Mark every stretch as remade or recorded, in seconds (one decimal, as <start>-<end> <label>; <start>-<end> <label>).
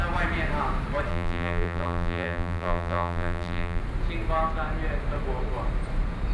0.0-1.1 recorded; 1.1-3.8 remade; 3.8-6.3 recorded